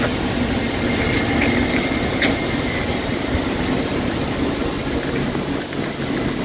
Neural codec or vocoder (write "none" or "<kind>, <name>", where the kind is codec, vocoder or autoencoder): none